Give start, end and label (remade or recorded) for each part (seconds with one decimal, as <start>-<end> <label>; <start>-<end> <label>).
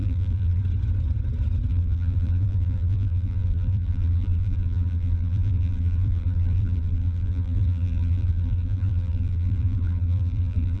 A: 0.0-0.6 remade; 0.6-1.7 recorded; 1.7-10.8 remade